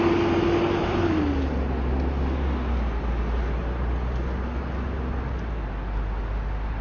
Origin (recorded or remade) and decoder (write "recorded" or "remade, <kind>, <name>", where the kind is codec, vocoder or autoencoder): recorded